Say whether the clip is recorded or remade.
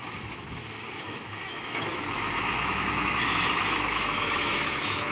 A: remade